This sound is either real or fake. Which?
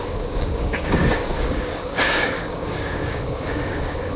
fake